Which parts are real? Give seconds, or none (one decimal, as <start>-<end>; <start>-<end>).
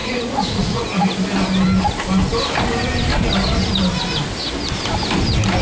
0.8-5.6